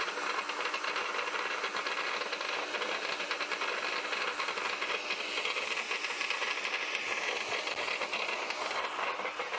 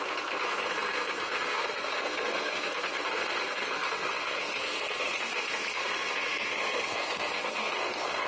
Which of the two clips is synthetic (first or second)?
second